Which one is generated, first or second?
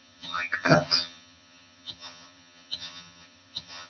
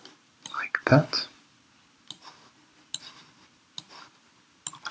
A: first